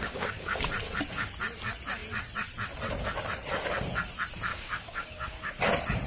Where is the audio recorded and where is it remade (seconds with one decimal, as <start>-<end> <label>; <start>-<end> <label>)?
0.0-0.7 remade; 0.7-4.5 recorded; 4.5-5.6 remade; 5.6-6.1 recorded